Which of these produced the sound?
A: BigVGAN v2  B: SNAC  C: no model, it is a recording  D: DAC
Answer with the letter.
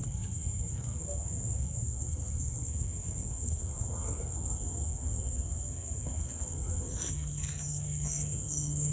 B